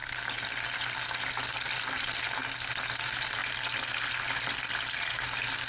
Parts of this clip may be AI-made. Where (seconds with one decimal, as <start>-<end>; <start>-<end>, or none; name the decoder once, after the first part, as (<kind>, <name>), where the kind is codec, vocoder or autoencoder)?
none